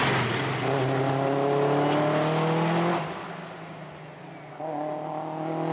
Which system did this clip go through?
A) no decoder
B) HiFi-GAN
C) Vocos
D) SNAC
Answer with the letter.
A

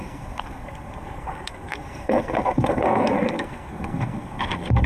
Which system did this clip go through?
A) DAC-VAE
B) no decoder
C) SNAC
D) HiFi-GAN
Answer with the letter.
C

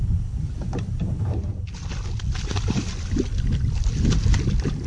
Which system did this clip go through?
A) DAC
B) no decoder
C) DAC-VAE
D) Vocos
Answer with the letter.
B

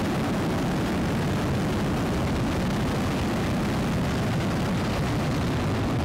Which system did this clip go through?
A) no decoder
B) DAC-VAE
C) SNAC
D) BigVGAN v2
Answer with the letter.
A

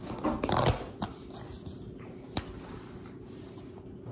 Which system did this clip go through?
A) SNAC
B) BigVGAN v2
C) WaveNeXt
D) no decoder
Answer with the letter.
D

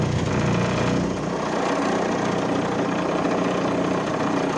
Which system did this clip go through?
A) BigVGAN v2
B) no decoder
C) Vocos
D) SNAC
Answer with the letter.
B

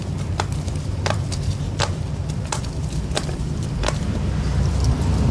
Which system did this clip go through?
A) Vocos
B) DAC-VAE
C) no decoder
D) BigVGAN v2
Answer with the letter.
D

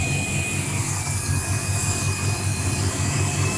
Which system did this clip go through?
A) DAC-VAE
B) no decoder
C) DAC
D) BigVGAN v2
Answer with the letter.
C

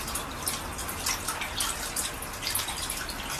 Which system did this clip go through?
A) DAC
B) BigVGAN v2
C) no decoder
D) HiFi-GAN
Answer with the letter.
C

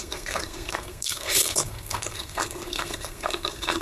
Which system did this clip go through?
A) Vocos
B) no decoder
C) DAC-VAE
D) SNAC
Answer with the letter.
D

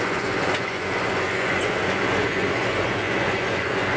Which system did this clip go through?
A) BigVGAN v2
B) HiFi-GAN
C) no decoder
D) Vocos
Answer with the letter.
D